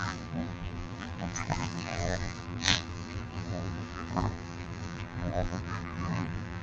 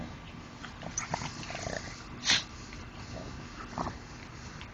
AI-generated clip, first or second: first